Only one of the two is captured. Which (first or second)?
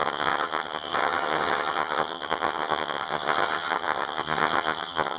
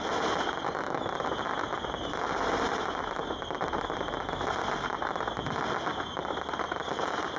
second